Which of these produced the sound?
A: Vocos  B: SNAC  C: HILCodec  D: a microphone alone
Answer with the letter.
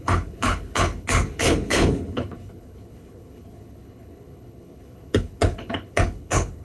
C